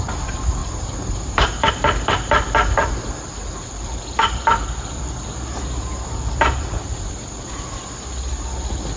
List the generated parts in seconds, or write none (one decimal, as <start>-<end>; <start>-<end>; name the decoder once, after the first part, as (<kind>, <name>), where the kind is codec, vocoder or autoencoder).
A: 0.6-1.7 (vocoder, BigVGAN v2)